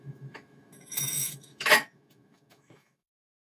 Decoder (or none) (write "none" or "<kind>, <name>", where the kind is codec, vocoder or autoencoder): autoencoder, DAC-VAE